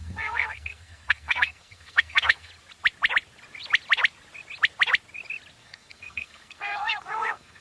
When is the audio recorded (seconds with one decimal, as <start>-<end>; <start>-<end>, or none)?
2.5-5.6